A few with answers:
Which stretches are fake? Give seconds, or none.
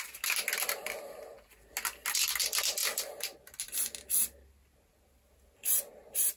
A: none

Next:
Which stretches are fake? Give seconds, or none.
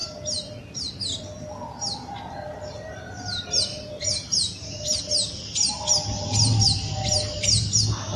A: 3.7-5.0 (vocoder, BigVGAN v2)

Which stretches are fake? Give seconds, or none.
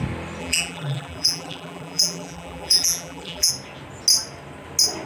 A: 0.4-3.5 (vocoder, BigVGAN v2)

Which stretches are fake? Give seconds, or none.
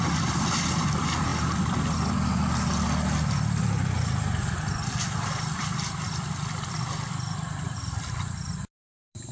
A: 0.0-1.3 (vocoder, BigVGAN v2); 3.6-9.3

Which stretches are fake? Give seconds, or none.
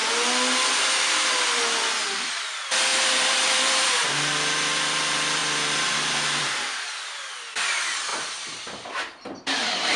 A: 2.9-4.1 (vocoder, BigVGAN v2); 5.4-7.1; 8.1-9.0